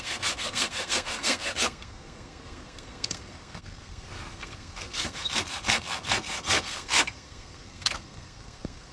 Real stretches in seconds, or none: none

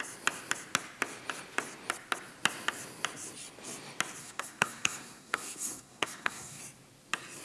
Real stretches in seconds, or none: 0.0-4.2; 6.6-7.4

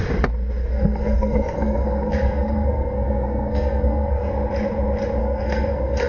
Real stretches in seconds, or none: 0.0-0.6; 4.3-5.2

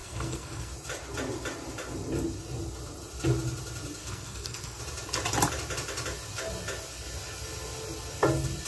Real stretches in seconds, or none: 0.7-4.0; 4.8-8.7

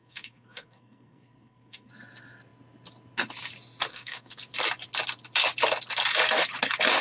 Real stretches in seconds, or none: 1.9-3.9; 4.4-7.0

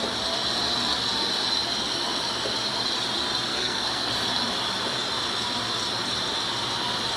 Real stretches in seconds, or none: 0.0-3.5; 4.1-7.2